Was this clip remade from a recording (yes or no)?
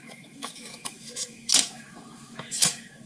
yes